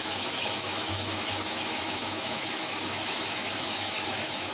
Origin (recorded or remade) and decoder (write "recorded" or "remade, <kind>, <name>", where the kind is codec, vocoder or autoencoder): remade, autoencoder, DAC-VAE